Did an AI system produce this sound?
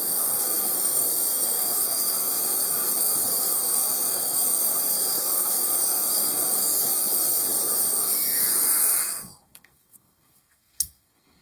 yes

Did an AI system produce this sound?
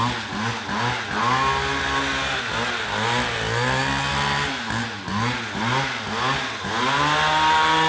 no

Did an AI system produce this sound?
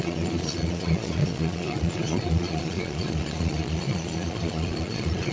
yes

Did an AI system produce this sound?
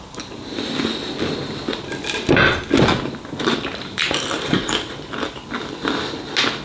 no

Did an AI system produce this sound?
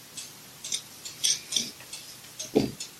no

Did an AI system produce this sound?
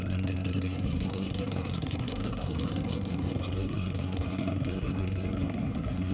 yes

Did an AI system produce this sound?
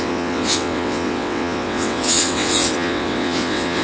yes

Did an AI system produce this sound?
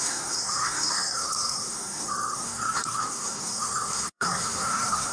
yes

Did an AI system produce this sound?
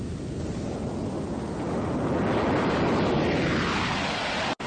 no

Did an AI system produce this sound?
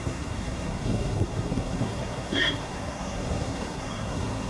yes